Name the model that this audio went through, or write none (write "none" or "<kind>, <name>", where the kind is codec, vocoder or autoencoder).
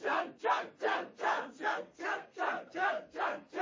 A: codec, SNAC